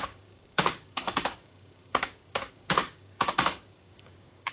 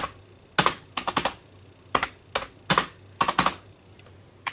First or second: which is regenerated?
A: first